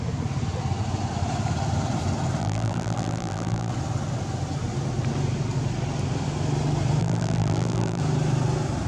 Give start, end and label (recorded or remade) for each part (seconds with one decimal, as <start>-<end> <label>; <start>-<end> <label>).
0.0-2.4 recorded; 2.4-3.7 remade; 3.7-7.0 recorded; 7.0-8.0 remade; 8.0-8.9 recorded